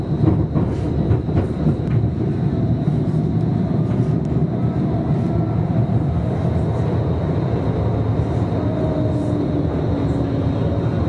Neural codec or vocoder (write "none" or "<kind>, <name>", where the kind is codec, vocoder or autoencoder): none